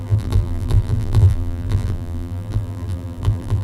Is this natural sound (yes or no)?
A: no